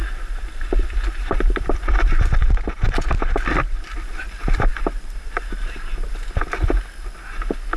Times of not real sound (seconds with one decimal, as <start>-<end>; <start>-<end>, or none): 0.0-3.3